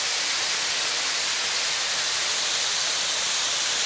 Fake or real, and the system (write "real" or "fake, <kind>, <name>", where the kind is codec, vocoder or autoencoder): real